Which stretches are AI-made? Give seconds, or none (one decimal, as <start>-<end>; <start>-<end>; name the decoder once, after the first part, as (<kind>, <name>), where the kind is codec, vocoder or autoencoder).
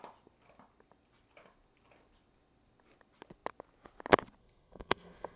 4.4-5.4 (codec, SNAC)